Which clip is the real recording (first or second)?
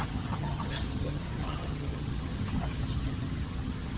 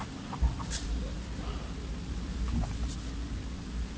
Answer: second